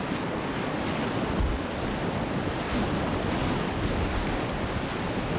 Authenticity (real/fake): real